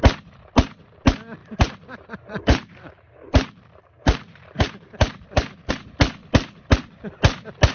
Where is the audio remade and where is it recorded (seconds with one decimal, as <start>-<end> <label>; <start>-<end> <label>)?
0.0-1.4 recorded; 1.4-5.7 remade; 5.7-7.7 recorded